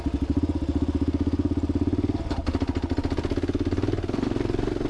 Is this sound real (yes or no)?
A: yes